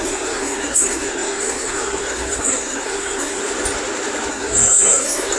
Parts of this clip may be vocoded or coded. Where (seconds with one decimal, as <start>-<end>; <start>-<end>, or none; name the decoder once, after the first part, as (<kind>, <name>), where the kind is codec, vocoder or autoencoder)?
0.0-3.4 (codec, SNAC); 4.3-5.4

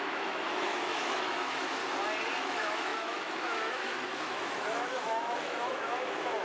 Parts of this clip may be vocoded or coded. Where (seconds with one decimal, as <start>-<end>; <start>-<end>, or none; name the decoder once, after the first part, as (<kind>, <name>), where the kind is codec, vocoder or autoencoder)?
0.0-1.8 (autoencoder, DAC-VAE); 2.4-6.4

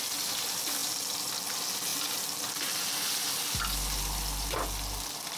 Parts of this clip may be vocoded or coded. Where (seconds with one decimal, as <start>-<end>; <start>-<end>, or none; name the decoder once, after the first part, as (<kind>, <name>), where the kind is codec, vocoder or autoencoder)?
none